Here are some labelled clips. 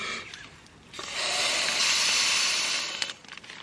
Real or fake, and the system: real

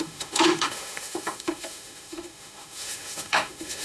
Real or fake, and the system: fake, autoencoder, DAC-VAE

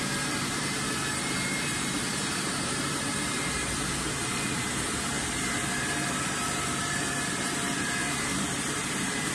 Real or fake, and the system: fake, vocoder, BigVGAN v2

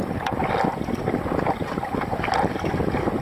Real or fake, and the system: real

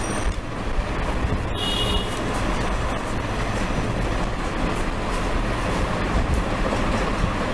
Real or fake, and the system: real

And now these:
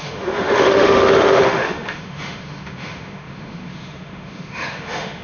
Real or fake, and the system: fake, autoencoder, DAC-VAE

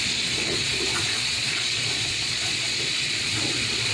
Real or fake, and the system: fake, vocoder, Vocos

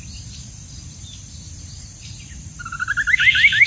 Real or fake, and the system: real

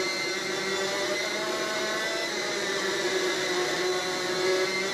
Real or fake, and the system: real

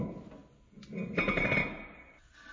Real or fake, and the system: real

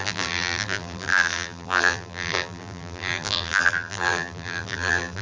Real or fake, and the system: fake, vocoder, BigVGAN v2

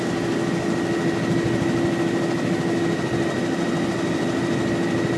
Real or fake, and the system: real